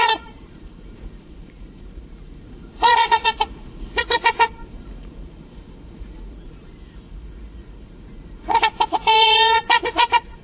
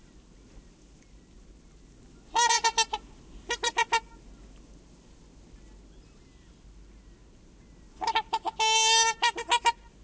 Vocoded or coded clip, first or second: first